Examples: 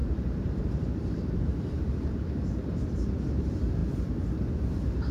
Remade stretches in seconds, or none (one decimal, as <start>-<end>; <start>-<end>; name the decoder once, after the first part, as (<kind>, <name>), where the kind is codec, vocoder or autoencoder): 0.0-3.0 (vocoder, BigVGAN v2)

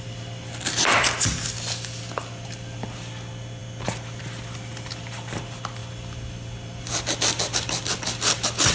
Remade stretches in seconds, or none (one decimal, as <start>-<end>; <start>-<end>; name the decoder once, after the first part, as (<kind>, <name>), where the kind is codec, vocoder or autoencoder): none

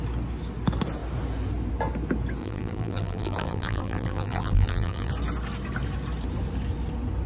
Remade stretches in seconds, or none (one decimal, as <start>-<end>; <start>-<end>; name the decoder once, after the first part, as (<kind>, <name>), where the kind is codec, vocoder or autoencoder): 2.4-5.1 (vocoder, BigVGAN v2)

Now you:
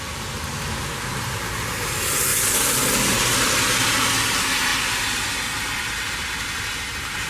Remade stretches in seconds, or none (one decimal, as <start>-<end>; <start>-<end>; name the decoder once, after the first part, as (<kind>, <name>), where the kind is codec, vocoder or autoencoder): 0.5-1.4 (vocoder, BigVGAN v2); 6.2-7.3

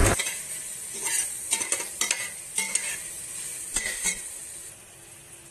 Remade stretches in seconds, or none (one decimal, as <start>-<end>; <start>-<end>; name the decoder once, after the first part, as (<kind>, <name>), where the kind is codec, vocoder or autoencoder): 0.0-0.5 (vocoder, BigVGAN v2); 1.2-2.1; 2.7-4.4